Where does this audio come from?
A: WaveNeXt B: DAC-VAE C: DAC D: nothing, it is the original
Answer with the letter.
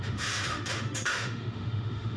B